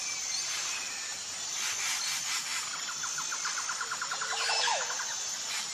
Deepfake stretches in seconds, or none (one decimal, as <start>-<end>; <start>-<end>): 0.0-1.1; 4.5-5.7